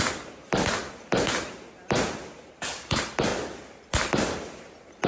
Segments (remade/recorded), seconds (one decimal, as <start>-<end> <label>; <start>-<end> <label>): 0.0-5.1 recorded